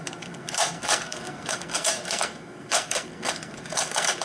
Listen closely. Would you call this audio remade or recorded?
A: remade